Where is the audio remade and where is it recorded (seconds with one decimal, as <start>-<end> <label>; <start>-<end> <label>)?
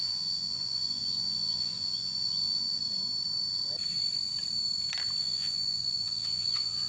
0.0-2.8 remade; 2.8-5.2 recorded; 5.2-6.9 remade